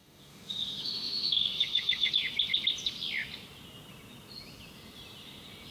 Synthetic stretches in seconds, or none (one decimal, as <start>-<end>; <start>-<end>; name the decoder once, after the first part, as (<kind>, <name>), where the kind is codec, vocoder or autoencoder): 0.0-2.1 (autoencoder, DAC-VAE)